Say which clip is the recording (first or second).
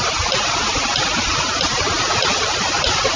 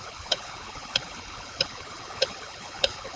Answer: first